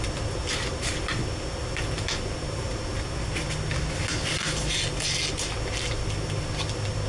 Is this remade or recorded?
recorded